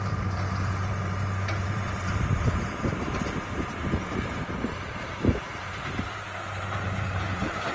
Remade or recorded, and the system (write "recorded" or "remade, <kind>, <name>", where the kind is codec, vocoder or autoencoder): remade, vocoder, BigVGAN v2